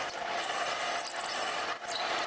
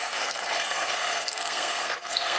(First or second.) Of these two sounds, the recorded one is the first